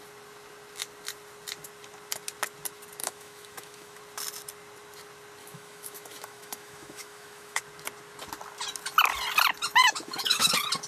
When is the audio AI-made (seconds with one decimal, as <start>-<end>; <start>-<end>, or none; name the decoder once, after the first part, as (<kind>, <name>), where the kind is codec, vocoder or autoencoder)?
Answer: 3.0-4.0 (autoencoder, DAC-VAE); 5.4-7.6; 9.8-10.5